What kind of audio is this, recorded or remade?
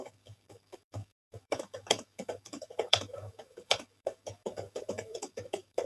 remade